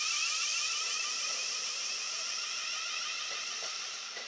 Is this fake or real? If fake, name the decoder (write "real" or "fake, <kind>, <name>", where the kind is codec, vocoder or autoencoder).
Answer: fake, vocoder, BigVGAN v2